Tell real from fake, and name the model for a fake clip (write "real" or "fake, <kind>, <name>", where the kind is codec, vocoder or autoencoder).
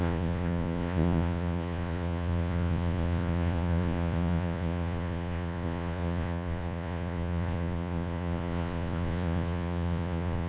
fake, vocoder, Vocos